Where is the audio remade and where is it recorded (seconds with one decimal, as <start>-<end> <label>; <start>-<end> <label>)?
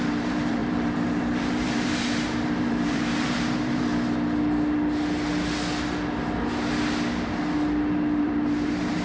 0.0-3.9 remade; 3.9-8.2 recorded; 8.2-9.0 remade